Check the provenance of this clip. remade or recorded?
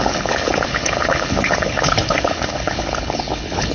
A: remade